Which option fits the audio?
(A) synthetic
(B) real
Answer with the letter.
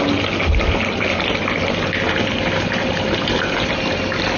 B